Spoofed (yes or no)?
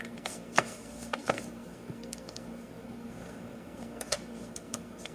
yes